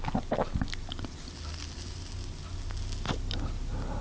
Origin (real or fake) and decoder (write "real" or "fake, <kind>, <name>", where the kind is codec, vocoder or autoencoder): real